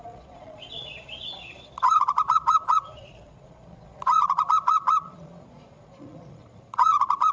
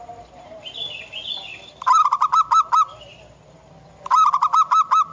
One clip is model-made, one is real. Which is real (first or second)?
second